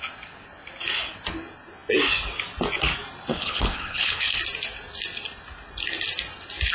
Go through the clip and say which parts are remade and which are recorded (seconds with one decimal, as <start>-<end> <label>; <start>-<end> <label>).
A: 0.0-3.3 recorded; 3.3-4.4 remade; 4.4-6.7 recorded